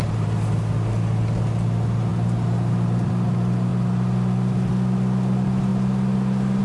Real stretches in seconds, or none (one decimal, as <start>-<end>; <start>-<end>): 0.0-2.1; 3.1-3.7; 4.7-6.6